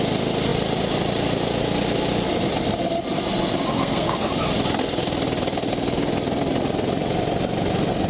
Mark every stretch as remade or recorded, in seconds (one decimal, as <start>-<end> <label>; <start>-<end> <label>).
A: 0.0-3.7 recorded; 3.7-4.3 remade; 4.3-8.1 recorded